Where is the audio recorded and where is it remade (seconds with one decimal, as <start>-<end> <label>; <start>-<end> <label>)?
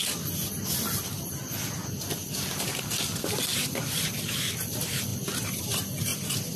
0.0-6.6 recorded